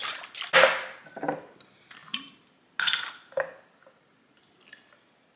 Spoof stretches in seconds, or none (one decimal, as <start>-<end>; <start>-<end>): none